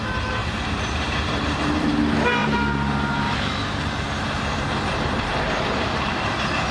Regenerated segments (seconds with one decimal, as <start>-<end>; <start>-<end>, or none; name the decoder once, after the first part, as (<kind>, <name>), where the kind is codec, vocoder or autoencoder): 0.4-2.0 (vocoder, BigVGAN v2); 2.4-6.1